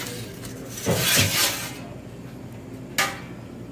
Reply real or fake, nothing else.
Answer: real